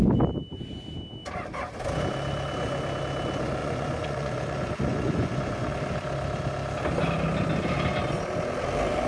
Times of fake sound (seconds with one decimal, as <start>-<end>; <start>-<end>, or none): 3.6-5.7